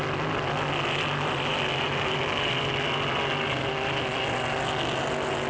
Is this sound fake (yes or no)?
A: no